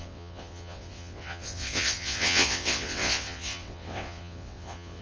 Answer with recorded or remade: remade